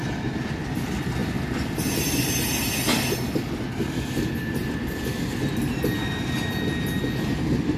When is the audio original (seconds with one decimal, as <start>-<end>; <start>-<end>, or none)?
0.0-7.8